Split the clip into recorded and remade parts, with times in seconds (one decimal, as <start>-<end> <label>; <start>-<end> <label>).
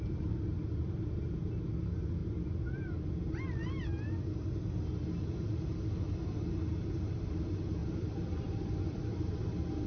0.0-7.8 recorded; 7.8-9.4 remade; 9.4-9.9 recorded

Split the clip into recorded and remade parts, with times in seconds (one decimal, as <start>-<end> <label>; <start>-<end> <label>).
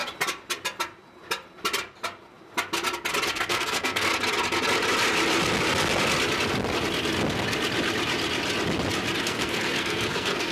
0.0-3.3 recorded; 3.3-4.1 remade; 4.1-9.2 recorded; 9.2-10.5 remade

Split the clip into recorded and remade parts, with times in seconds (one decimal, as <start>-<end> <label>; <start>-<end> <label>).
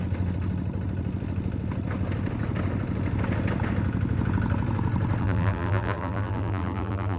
0.0-5.2 recorded; 5.2-7.2 remade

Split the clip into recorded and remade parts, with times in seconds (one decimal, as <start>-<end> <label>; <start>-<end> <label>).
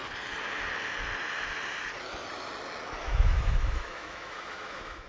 0.0-3.0 recorded; 3.0-5.1 remade